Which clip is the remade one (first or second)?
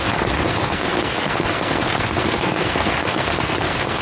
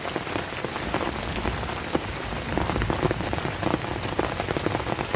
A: first